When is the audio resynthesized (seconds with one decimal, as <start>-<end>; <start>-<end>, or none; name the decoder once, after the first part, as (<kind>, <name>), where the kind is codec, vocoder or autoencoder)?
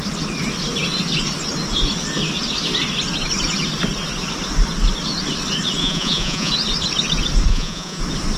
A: 5.8-6.5 (vocoder, Vocos); 7.5-8.0